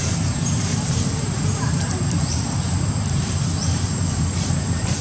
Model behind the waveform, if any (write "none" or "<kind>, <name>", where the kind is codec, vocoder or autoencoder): vocoder, BigVGAN v2